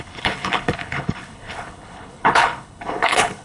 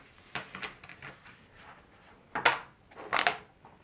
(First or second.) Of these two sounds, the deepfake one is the first